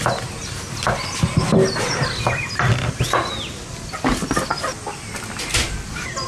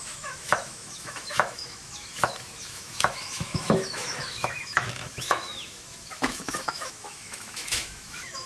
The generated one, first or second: second